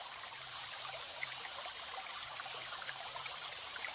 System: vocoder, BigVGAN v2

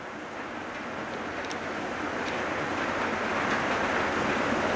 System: none